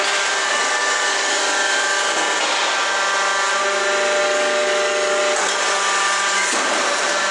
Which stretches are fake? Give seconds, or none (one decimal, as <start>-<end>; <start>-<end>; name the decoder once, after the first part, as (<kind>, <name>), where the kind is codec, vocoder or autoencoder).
0.4-1.4 (codec, DAC); 4.2-5.2